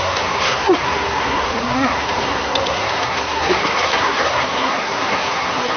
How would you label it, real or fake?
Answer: fake